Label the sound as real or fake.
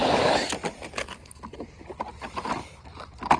real